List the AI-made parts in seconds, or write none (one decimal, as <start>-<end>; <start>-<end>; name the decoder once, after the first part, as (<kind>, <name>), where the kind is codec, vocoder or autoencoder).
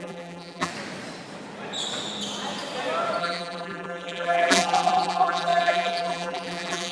0.0-0.7 (vocoder, BigVGAN v2); 3.2-6.9